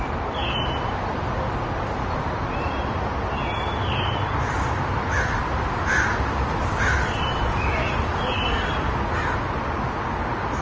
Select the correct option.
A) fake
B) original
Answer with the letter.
B